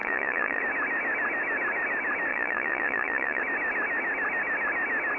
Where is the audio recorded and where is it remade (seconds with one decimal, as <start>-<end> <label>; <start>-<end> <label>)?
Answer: 0.0-0.6 remade; 0.6-2.3 recorded; 2.3-3.4 remade; 3.4-5.2 recorded